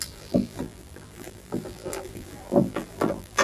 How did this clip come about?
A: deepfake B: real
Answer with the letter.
A